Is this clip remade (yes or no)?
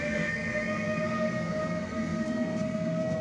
yes